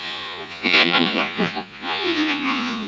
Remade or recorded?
remade